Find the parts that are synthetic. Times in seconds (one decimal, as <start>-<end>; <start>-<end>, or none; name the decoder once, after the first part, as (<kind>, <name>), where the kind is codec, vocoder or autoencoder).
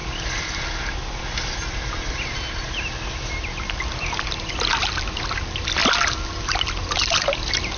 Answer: none